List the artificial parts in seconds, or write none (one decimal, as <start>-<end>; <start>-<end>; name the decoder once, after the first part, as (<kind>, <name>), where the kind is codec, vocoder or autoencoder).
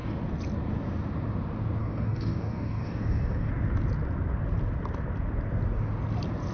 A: 1.8-3.5 (codec, DAC)